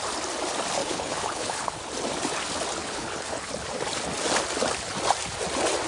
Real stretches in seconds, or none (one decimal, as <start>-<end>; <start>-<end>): 0.0-0.8; 1.8-2.8; 3.5-5.9